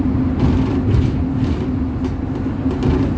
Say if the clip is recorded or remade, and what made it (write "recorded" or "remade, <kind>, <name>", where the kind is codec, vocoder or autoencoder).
recorded